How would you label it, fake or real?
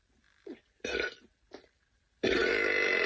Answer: real